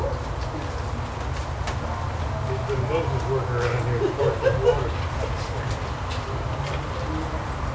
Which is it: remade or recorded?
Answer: recorded